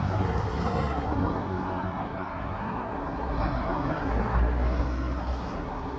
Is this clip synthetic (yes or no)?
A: yes